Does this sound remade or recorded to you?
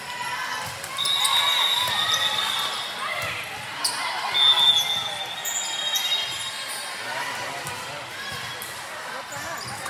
recorded